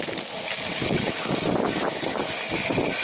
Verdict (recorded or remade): recorded